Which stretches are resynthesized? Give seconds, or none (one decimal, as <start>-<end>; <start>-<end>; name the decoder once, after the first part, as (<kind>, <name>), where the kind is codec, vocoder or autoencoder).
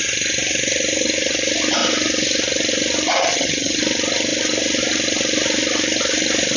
3.2-3.8 (vocoder, HiFi-GAN)